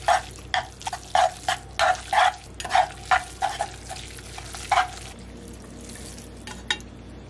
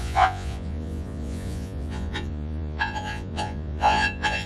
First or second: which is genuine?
first